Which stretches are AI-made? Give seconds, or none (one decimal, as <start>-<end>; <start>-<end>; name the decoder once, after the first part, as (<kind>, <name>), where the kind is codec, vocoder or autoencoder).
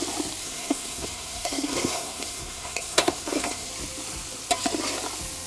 0.4-3.7 (codec, SNAC)